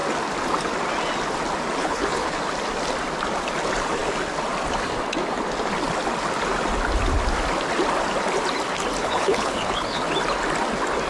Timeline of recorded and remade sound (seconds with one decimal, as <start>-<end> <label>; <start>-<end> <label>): 0.0-1.8 recorded; 1.8-2.4 remade; 2.4-9.0 recorded; 9.0-10.0 remade; 10.0-11.1 recorded